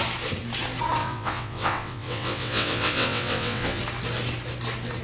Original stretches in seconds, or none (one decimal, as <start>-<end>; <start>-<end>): 0.0-1.0; 3.8-5.0